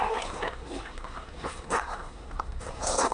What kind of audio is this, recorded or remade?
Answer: remade